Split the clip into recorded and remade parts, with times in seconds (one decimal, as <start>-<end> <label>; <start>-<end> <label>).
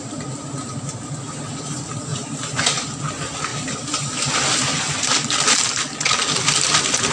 0.0-7.1 recorded